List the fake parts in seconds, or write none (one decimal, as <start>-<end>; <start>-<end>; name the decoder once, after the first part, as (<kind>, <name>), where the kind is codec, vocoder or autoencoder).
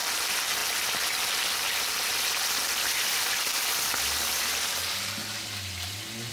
3.5-4.8 (vocoder, BigVGAN v2)